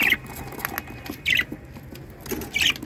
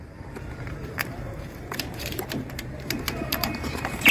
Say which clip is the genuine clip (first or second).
first